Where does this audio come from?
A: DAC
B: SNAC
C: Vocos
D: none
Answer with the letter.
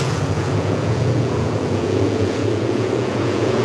C